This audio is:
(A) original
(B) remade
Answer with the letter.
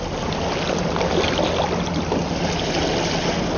A